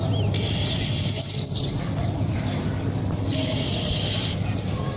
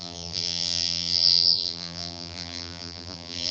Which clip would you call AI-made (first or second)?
second